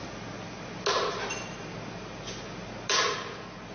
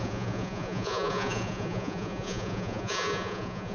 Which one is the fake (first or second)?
second